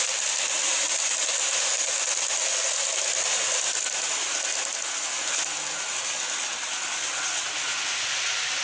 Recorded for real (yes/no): yes